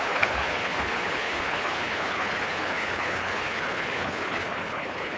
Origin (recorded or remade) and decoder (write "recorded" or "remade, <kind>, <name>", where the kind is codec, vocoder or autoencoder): remade, codec, HILCodec